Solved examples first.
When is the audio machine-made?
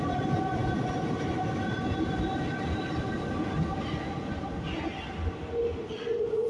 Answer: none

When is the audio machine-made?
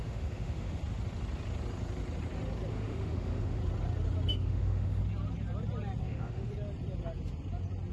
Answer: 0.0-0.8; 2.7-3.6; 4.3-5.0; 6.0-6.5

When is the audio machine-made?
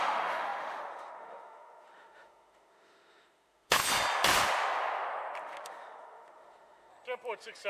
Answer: 0.0-3.8; 5.4-6.9